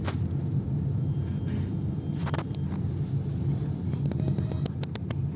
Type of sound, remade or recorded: recorded